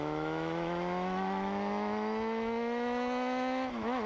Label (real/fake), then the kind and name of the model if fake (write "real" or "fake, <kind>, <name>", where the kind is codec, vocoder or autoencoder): fake, autoencoder, DAC-VAE